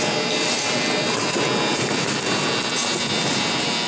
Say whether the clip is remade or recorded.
recorded